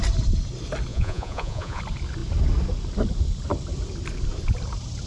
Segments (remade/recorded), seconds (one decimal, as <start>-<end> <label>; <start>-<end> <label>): 0.0-0.9 recorded; 0.9-1.8 remade; 1.8-5.1 recorded